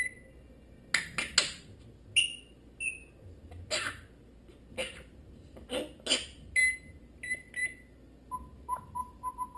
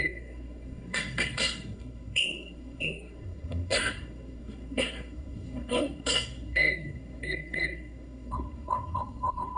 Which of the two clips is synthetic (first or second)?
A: second